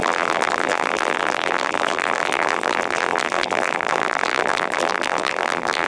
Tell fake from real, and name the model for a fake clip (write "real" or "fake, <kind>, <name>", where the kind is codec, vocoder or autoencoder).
fake, vocoder, BigVGAN v2